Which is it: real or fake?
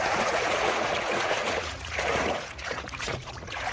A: fake